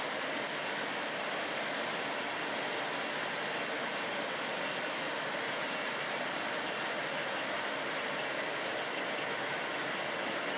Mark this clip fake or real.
real